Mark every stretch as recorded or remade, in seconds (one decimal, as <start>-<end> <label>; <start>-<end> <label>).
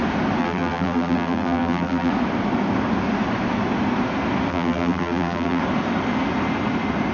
0.0-0.4 recorded; 0.4-2.1 remade; 2.1-4.5 recorded; 4.5-5.6 remade; 5.6-7.1 recorded